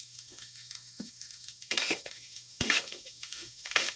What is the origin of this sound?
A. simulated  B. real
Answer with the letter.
A